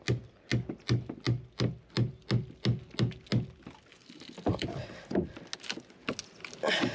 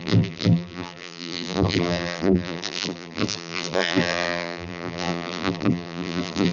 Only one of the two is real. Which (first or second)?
first